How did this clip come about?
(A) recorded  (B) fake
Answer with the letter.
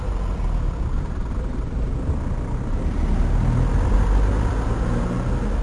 A